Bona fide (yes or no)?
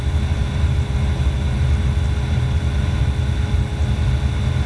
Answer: yes